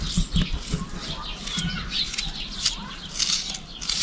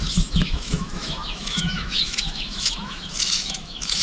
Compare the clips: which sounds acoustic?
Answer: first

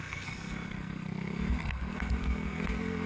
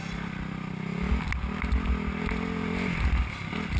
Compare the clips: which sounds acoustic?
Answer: second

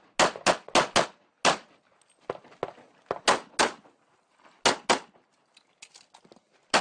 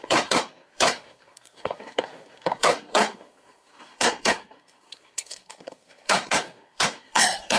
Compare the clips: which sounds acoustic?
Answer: first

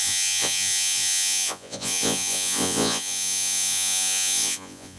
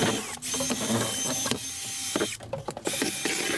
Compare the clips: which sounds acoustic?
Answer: second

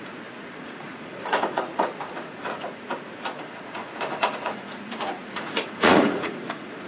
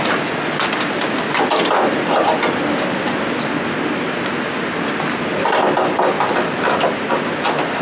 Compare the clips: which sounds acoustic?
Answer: second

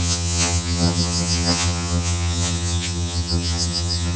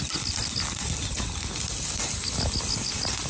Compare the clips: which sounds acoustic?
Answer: second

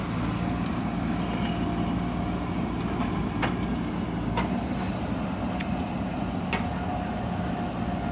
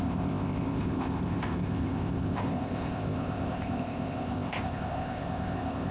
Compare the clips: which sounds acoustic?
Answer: first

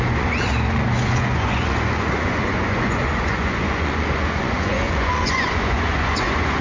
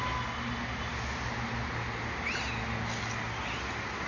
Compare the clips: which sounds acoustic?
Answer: second